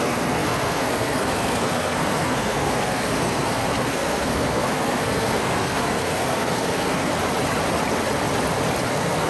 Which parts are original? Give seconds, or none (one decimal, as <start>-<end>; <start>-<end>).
7.1-8.9